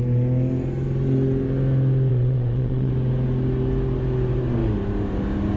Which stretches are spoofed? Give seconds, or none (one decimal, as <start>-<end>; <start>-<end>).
2.1-2.9